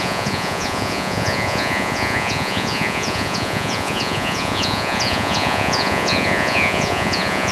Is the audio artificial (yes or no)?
yes